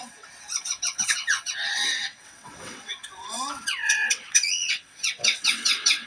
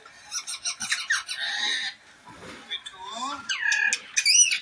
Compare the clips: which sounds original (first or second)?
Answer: second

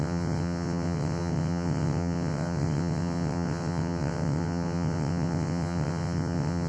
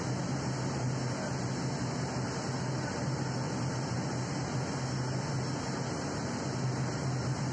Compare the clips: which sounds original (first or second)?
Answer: second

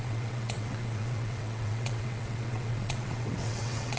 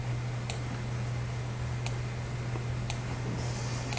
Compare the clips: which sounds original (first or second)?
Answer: second